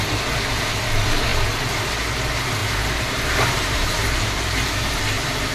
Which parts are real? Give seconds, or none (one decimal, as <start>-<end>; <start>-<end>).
0.0-2.6; 5.0-5.5